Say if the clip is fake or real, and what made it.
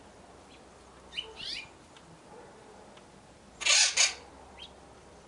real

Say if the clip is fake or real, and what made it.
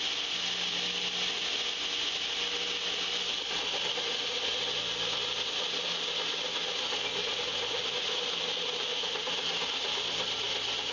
real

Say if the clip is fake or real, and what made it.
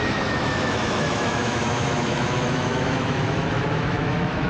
fake, autoencoder, DAC-VAE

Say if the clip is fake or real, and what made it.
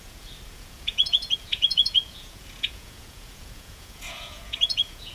fake, vocoder, Vocos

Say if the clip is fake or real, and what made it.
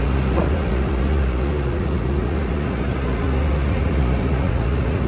fake, vocoder, Vocos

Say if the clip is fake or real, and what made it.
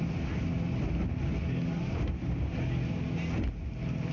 real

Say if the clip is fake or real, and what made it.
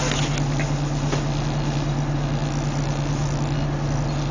real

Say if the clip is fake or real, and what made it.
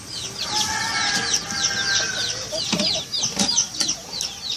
real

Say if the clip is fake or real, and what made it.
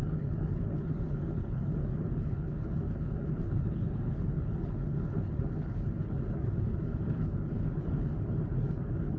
fake, codec, HILCodec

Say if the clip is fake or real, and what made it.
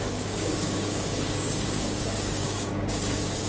fake, codec, DAC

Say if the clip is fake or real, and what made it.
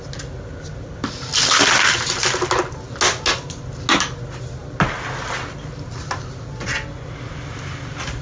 real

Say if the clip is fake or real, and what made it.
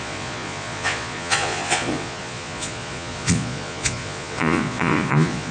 fake, vocoder, Vocos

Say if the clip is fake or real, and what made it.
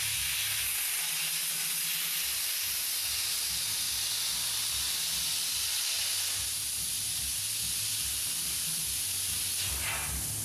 real